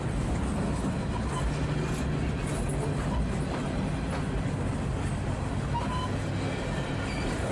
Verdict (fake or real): real